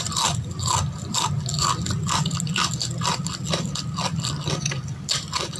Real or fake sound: real